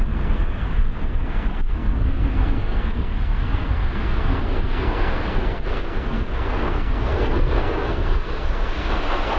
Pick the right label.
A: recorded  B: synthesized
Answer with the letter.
B